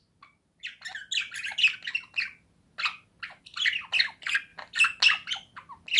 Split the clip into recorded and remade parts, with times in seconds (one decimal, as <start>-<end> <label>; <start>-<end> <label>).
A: 0.0-6.0 recorded